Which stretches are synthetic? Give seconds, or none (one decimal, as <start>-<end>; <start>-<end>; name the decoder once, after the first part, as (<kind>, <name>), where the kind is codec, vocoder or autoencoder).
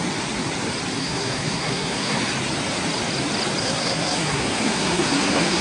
1.0-2.2 (codec, SNAC); 3.6-5.6